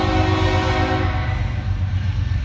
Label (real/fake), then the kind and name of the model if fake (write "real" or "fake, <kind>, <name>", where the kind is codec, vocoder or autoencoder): real